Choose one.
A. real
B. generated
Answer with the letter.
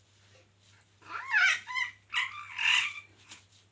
A